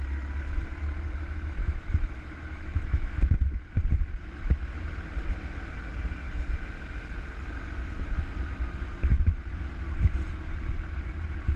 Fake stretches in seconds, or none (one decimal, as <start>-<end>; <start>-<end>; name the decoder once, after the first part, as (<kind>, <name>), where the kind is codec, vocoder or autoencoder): 1.6-3.2 (autoencoder, DAC-VAE)